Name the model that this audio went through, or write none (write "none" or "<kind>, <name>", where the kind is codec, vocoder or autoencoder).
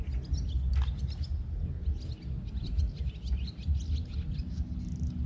none